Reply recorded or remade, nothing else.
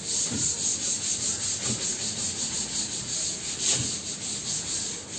recorded